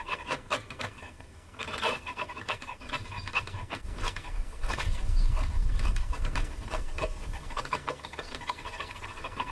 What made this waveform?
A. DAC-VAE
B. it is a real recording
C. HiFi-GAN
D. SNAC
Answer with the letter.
D